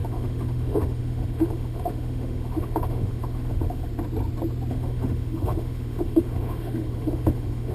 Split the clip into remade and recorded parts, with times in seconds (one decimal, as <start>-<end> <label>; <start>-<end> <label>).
0.0-3.9 remade; 3.9-4.7 recorded; 4.7-7.7 remade